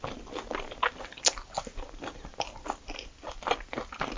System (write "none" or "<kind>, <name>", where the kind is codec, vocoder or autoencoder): none